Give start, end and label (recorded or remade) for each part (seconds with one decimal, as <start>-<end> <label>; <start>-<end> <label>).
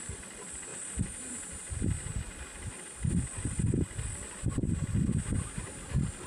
0.0-0.7 recorded; 0.7-1.3 remade; 1.3-6.3 recorded